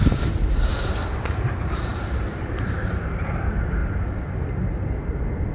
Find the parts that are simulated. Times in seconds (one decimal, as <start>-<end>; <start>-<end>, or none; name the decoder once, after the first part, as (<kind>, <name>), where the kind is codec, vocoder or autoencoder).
0.0-0.7 (vocoder, BigVGAN v2); 1.2-5.5